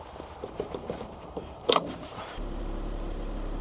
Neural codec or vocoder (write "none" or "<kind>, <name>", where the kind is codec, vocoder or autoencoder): vocoder, BigVGAN v2